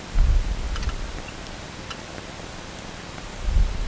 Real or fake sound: real